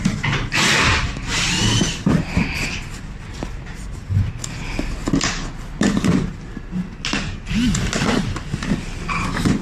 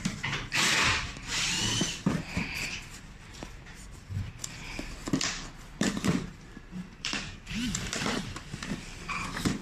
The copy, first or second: second